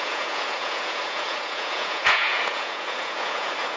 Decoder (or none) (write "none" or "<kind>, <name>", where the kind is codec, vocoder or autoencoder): vocoder, Vocos